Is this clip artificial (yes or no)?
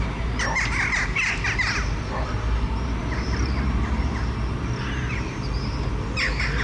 no